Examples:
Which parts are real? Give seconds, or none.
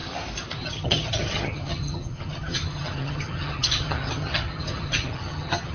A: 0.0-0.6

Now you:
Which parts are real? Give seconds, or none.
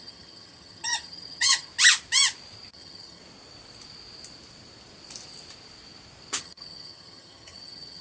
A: 1.7-2.7; 3.2-6.4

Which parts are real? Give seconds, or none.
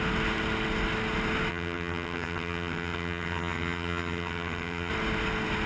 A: 0.0-1.5; 4.9-5.7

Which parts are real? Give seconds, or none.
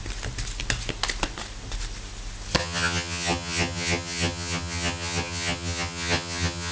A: 0.0-2.6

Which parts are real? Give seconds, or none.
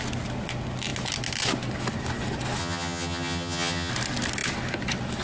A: 0.0-2.6; 3.9-5.2